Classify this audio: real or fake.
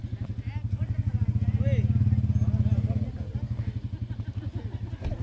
real